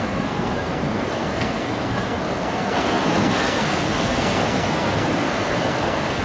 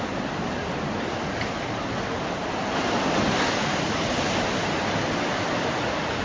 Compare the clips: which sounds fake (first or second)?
first